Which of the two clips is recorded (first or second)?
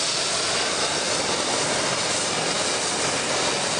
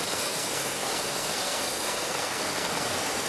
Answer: first